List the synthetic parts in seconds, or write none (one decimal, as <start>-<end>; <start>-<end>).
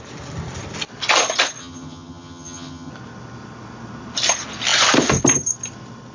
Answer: 1.6-2.9